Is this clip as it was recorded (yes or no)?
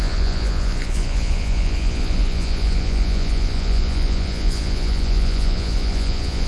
no